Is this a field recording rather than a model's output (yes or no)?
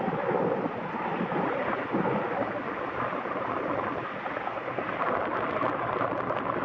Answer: yes